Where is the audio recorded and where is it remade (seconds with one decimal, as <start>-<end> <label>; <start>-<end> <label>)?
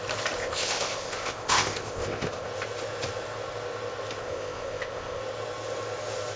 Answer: 0.0-0.4 recorded; 0.4-2.5 remade; 2.5-4.2 recorded; 4.2-5.2 remade; 5.2-6.4 recorded